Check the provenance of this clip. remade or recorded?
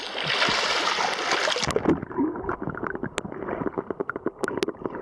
recorded